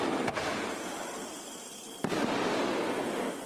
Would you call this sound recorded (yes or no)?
yes